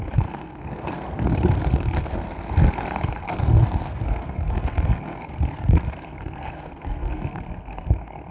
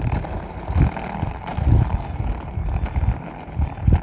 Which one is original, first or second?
second